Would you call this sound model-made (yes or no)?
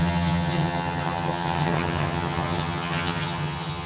yes